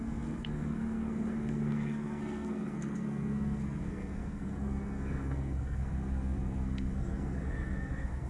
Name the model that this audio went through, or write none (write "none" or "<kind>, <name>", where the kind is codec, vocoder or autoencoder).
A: codec, SNAC